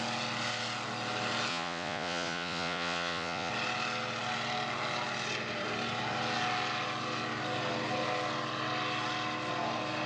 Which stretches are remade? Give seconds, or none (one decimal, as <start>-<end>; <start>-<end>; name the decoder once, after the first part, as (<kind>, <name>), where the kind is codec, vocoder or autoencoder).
1.5-3.5 (vocoder, Vocos)